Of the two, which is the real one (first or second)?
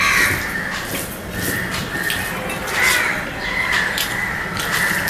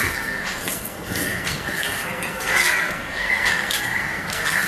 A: first